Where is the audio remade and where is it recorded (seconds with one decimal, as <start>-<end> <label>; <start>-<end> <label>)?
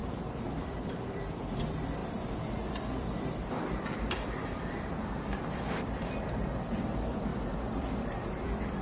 0.0-8.8 remade